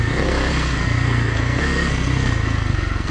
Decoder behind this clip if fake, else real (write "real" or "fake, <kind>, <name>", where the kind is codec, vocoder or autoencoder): fake, codec, SNAC